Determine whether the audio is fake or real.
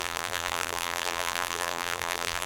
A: fake